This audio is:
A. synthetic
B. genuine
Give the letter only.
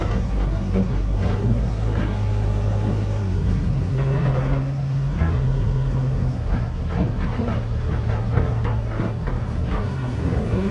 A